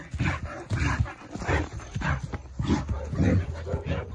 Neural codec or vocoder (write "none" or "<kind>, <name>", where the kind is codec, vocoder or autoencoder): none